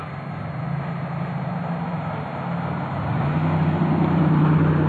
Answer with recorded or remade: recorded